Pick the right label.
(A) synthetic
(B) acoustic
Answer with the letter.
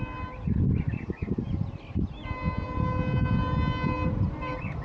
B